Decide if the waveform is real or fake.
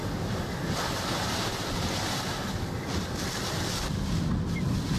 real